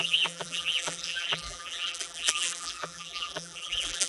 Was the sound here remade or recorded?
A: remade